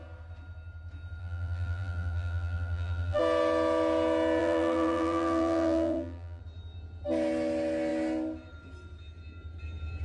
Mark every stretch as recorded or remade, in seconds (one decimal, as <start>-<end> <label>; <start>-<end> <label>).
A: 0.0-1.2 recorded; 1.2-3.2 remade; 3.2-4.4 recorded; 4.4-6.4 remade; 6.4-10.0 recorded